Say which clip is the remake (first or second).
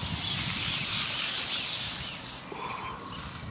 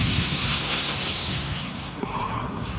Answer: second